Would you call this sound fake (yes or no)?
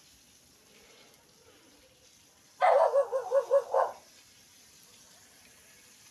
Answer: no